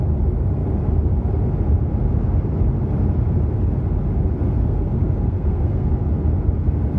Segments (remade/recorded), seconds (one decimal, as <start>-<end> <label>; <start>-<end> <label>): 0.0-4.6 recorded; 4.6-5.9 remade; 5.9-7.0 recorded